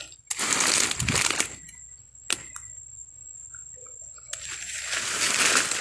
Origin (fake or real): real